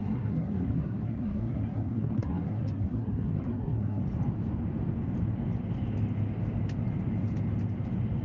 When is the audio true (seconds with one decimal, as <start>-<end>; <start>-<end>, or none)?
4.0-8.2